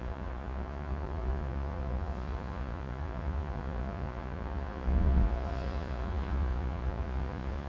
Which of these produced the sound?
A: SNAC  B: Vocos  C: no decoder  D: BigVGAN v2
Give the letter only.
B